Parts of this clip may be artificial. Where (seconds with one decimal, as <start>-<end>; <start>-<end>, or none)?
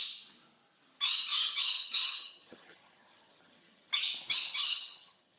1.4-3.9; 4.6-5.4